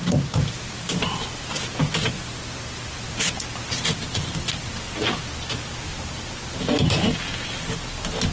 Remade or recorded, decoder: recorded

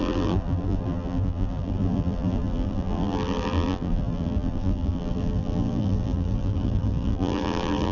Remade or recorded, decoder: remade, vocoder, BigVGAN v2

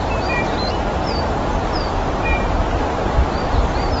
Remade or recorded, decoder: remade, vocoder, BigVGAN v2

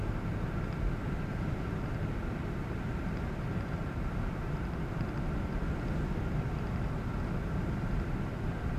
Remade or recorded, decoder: recorded